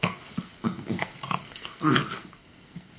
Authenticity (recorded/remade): remade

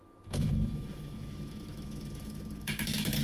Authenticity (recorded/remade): remade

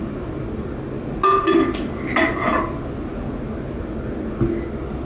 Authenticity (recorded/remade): recorded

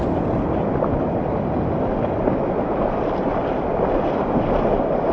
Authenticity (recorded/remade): recorded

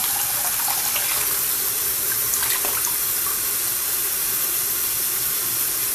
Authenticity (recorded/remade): recorded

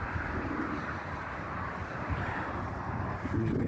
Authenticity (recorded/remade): remade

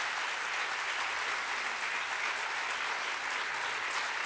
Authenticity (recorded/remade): recorded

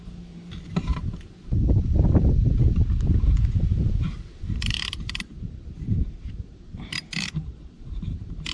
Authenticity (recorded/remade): remade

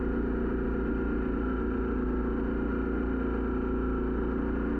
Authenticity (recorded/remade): recorded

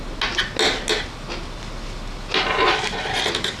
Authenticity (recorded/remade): recorded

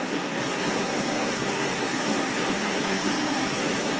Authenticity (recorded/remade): remade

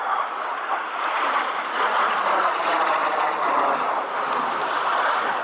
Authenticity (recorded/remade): recorded